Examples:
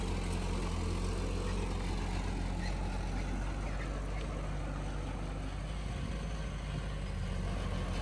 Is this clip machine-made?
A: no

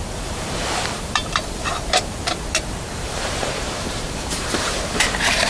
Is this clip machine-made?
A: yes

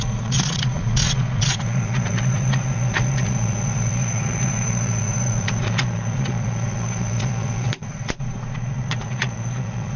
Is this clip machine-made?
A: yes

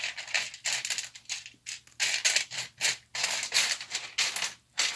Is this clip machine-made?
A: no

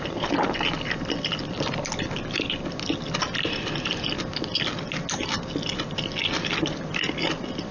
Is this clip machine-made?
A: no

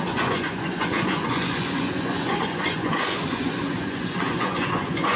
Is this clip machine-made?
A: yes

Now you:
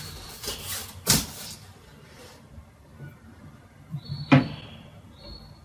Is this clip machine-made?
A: yes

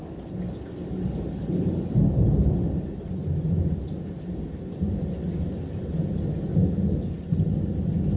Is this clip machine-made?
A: no